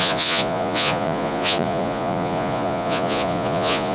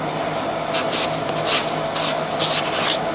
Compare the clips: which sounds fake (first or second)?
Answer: first